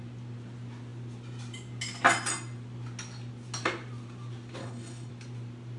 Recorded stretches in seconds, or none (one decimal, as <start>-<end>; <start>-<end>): 0.0-4.6; 5.1-5.8

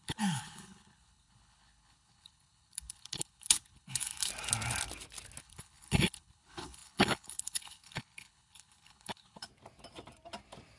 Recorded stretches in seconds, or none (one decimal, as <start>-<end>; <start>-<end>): 4.3-5.4; 9.5-10.8

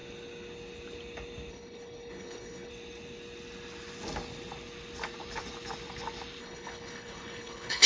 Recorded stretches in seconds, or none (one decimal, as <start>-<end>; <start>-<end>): 0.0-1.5; 2.7-6.4